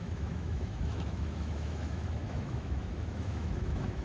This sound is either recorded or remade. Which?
remade